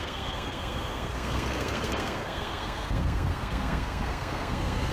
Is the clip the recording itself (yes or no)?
no